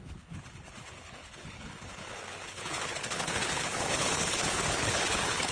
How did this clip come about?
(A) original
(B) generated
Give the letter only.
B